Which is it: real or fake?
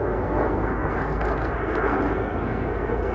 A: fake